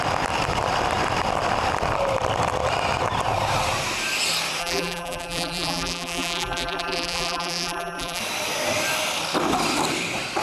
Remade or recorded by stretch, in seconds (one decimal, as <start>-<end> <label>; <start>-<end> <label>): 0.0-4.6 recorded; 4.6-8.2 remade; 8.2-10.4 recorded